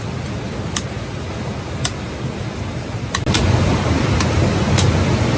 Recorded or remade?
recorded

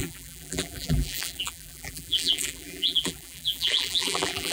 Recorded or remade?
remade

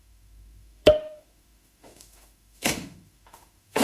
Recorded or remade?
remade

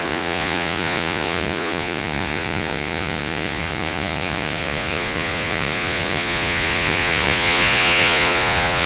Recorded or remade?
remade